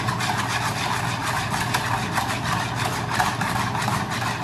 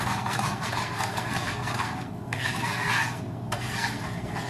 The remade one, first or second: second